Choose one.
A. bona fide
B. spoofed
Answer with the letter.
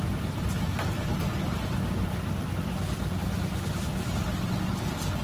A